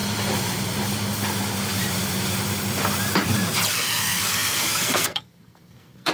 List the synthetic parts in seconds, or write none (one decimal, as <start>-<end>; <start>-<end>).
3.7-6.1

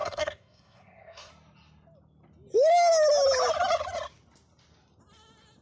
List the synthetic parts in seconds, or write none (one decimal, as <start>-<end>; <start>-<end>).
0.0-1.3

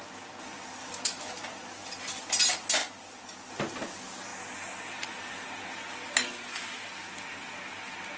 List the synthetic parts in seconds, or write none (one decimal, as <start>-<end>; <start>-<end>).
0.8-1.3

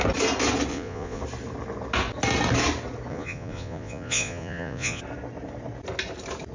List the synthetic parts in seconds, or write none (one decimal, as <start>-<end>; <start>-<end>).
0.7-1.2; 3.1-5.0

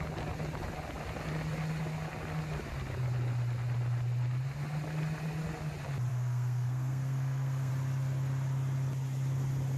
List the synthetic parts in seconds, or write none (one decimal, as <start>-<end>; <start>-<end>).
6.1-7.7

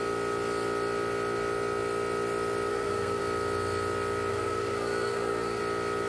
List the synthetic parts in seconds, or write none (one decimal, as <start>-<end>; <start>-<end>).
2.7-3.2; 4.3-5.6